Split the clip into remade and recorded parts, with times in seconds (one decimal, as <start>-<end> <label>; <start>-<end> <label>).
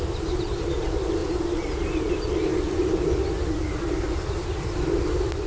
0.0-1.2 recorded; 1.2-2.1 remade; 2.1-5.5 recorded